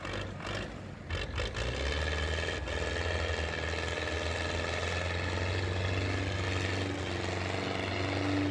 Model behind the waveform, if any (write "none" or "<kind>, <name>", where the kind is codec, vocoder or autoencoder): none